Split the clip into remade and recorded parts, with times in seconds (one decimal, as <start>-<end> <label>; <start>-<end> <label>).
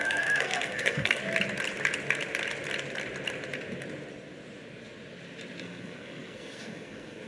0.0-1.2 remade; 1.2-5.6 recorded; 5.6-7.3 remade